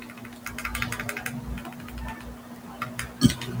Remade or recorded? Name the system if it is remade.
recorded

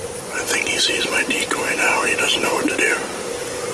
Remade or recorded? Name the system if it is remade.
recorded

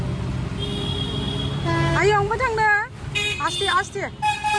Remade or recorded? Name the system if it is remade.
recorded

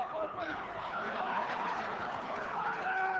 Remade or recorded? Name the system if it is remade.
remade, codec, HILCodec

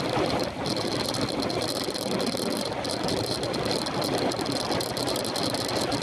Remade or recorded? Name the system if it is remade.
remade, vocoder, BigVGAN v2